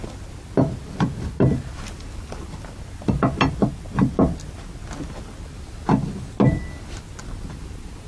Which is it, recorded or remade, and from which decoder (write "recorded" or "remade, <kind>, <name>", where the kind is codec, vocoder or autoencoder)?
recorded